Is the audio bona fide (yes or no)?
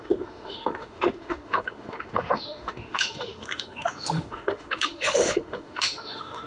no